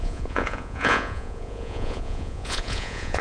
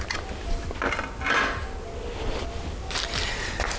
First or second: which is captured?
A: second